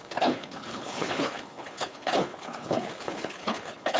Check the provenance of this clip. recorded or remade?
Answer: remade